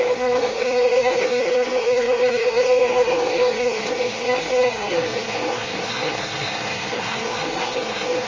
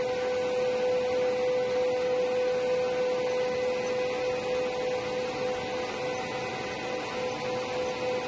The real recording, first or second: second